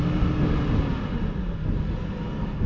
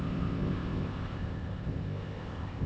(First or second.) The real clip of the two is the first